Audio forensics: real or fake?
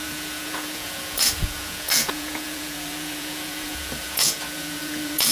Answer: fake